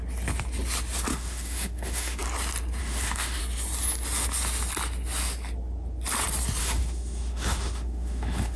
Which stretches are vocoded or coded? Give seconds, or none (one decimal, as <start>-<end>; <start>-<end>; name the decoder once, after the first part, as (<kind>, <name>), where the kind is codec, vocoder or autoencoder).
1.1-2.2 (autoencoder, DAC-VAE); 2.8-3.4; 6.6-8.6

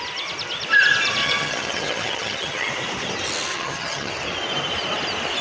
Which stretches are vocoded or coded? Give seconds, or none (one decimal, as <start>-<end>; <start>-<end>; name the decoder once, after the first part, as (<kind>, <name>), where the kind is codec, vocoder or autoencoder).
1.2-2.7 (vocoder, HiFi-GAN); 3.5-4.1

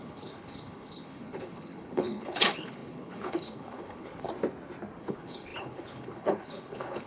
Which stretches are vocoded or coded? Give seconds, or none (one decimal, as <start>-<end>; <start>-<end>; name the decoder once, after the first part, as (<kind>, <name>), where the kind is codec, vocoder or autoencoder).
0.0-4.3 (codec, HILCodec); 5.0-7.1

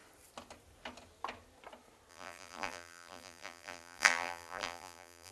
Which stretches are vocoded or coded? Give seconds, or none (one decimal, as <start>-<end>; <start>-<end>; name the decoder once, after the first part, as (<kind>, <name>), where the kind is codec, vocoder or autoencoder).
2.1-5.3 (vocoder, BigVGAN v2)

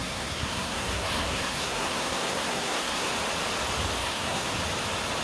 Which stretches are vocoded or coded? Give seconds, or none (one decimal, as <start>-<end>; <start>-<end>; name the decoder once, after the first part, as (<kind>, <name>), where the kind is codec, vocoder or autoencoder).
0.0-3.1 (codec, SNAC); 4.0-4.5